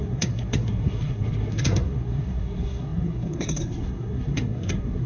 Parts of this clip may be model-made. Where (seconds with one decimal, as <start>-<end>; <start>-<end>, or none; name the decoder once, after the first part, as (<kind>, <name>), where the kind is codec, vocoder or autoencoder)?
0.0-5.1 (codec, SNAC)